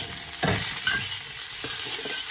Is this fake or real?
real